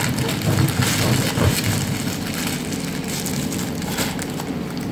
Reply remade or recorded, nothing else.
recorded